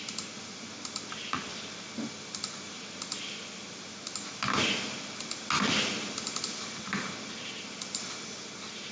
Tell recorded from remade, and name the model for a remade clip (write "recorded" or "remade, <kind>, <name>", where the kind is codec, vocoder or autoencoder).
recorded